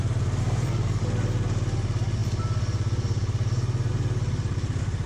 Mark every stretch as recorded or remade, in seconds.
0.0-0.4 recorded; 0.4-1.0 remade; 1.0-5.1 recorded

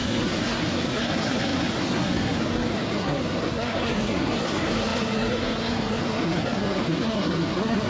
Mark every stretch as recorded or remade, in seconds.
0.0-7.9 remade

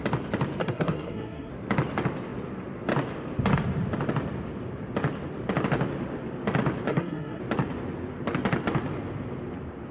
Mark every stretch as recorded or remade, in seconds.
0.0-0.6 recorded; 0.6-1.5 remade; 1.5-6.9 recorded; 6.9-7.4 remade; 7.4-9.9 recorded

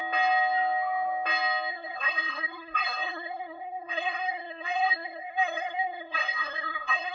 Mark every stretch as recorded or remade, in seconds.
0.0-1.7 recorded; 1.7-7.1 remade